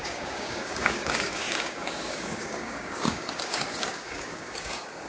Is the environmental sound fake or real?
fake